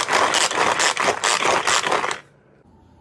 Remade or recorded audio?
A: recorded